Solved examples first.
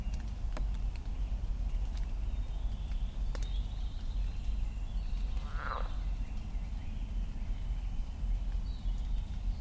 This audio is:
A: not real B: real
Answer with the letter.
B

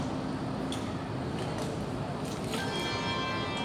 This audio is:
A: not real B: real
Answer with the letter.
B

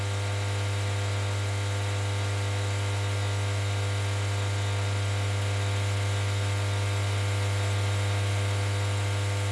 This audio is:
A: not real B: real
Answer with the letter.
B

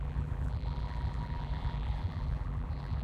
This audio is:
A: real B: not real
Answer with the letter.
B